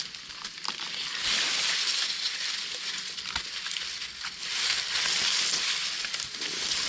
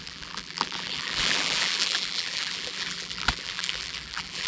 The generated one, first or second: second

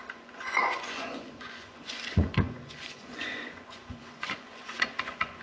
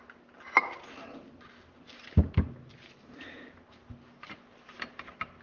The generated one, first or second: first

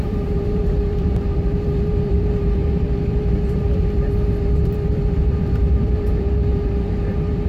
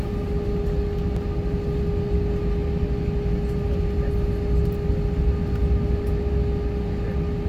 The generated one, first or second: first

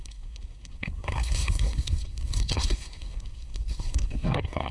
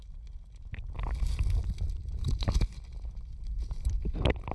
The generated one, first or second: first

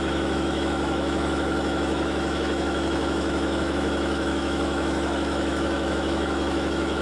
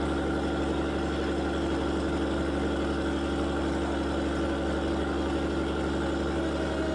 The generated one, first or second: first